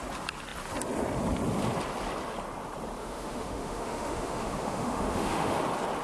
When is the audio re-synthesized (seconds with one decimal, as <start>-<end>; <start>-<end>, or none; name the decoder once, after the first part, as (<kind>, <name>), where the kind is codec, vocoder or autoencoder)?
3.0-5.6 (autoencoder, DAC-VAE)

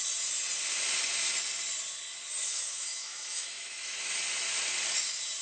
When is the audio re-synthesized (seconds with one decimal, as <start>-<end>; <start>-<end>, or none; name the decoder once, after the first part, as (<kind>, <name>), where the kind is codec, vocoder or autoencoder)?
2.4-4.1 (autoencoder, DAC-VAE)

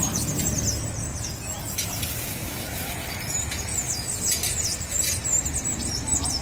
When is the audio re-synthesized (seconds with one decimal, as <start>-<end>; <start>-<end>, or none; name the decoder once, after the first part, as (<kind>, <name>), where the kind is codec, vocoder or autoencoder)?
2.3-2.9 (autoencoder, DAC-VAE)